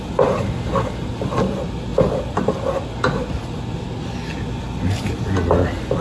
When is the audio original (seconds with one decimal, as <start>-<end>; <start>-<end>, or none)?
0.0-6.0